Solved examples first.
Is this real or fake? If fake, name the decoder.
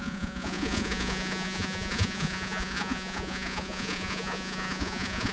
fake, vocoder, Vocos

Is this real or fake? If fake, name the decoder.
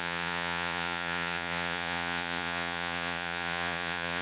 fake, vocoder, Vocos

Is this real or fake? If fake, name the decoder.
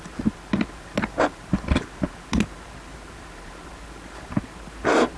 real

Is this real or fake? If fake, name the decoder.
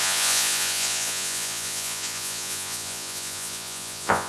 fake, vocoder, Vocos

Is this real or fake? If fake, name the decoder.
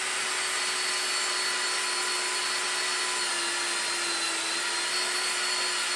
real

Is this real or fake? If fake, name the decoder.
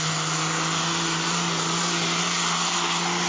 real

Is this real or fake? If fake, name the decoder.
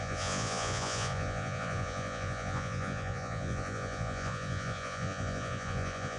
fake, vocoder, Vocos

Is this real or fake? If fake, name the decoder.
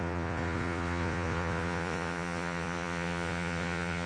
fake, vocoder, Vocos